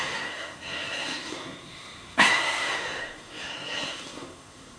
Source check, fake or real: fake